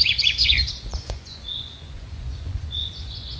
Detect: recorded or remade remade